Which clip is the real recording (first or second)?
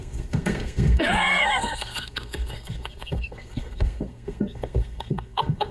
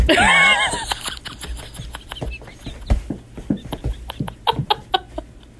second